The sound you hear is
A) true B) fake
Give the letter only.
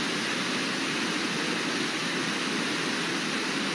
A